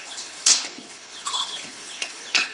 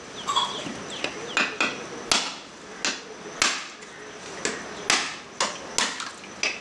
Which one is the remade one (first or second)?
first